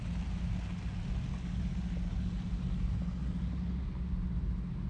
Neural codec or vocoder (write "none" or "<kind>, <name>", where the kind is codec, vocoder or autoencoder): none